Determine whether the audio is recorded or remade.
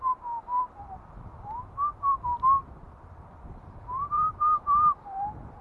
remade